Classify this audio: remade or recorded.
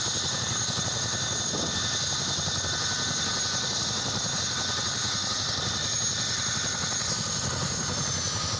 recorded